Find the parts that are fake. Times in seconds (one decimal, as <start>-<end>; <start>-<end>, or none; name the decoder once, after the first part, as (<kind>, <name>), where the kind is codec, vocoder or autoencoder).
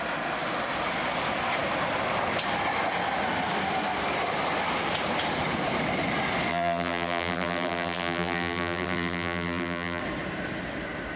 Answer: 6.5-10.0 (vocoder, BigVGAN v2)